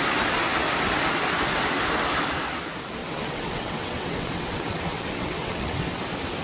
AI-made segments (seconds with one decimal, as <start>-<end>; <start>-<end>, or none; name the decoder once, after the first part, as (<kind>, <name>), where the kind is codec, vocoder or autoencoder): 3.0-6.0 (vocoder, WaveNeXt)